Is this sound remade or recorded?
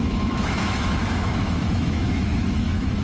remade